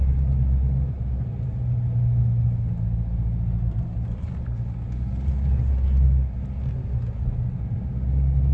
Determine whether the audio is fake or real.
real